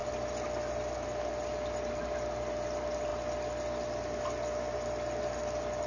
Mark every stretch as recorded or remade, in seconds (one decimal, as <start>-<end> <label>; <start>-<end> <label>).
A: 0.0-5.9 recorded